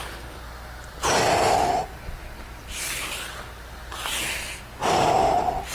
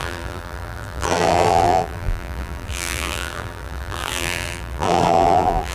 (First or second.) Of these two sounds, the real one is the first